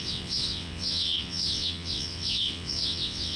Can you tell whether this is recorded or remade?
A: remade